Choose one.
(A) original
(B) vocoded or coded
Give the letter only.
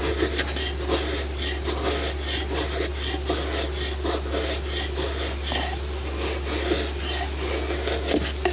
A